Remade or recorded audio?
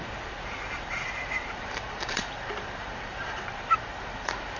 remade